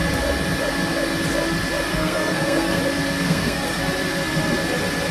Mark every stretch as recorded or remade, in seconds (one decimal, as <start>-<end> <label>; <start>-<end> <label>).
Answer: 0.0-1.9 recorded; 1.9-2.8 remade; 2.8-3.2 recorded; 3.2-3.8 remade; 3.8-5.1 recorded